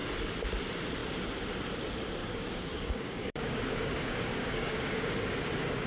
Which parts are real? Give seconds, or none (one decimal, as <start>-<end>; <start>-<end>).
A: 0.0-2.2; 5.1-5.9